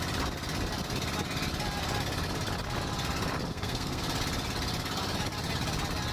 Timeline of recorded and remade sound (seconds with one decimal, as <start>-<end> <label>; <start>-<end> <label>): 0.0-3.5 recorded; 3.5-4.0 remade; 4.0-6.1 recorded